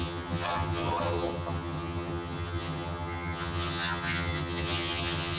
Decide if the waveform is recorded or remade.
remade